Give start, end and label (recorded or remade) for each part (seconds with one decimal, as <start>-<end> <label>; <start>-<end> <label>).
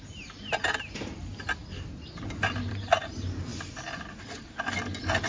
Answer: 0.0-1.6 recorded; 1.6-2.7 remade; 2.7-5.3 recorded